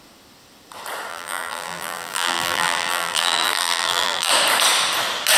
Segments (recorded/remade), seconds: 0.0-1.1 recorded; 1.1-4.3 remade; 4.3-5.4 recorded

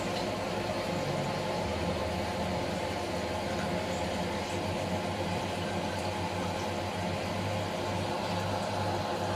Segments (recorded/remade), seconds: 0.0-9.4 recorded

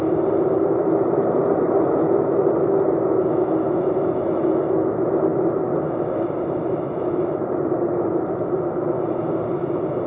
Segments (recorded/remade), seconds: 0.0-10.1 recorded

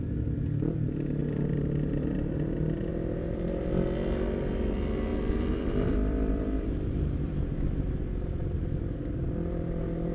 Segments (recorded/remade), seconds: 0.0-1.2 recorded; 1.2-2.9 remade; 2.9-5.1 recorded; 5.1-7.5 remade; 7.5-10.1 recorded

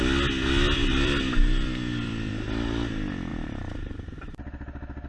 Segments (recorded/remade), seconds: 0.0-0.8 recorded; 0.8-2.3 remade; 2.3-3.3 recorded; 3.3-3.9 remade; 3.9-5.1 recorded

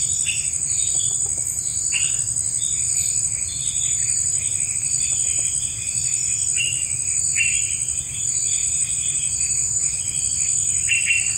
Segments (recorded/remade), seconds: 0.0-8.6 recorded; 8.6-10.0 remade; 10.0-11.4 recorded